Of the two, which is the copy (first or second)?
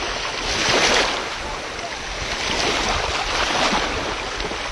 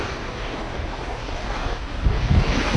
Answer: second